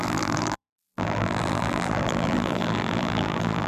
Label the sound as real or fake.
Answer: fake